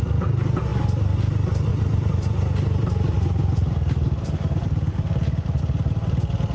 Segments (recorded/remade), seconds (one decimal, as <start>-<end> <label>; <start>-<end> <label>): 0.0-1.7 recorded; 1.7-5.6 remade; 5.6-6.5 recorded